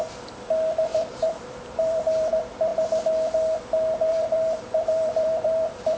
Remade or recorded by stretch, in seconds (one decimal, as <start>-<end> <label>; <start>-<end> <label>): 0.0-0.9 recorded; 0.9-2.3 remade; 2.3-4.1 recorded; 4.1-6.0 remade